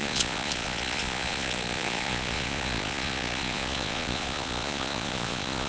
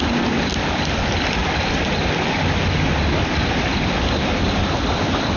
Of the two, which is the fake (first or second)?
first